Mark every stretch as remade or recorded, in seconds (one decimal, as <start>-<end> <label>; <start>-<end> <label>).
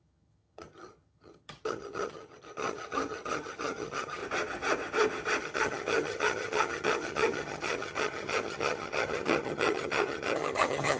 0.0-4.2 remade; 4.2-5.4 recorded; 5.4-11.0 remade